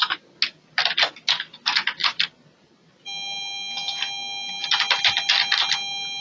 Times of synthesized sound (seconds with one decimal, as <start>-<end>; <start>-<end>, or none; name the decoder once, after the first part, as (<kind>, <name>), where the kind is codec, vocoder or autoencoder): none